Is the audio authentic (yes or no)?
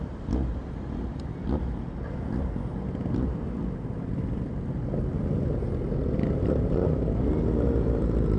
yes